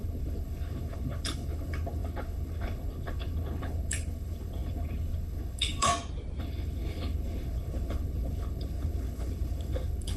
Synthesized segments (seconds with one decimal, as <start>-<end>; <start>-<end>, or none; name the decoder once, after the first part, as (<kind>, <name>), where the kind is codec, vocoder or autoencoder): 0.0-5.9 (codec, HILCodec); 6.4-10.2